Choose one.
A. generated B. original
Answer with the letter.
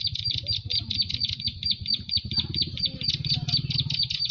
B